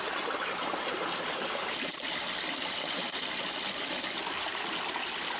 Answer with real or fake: real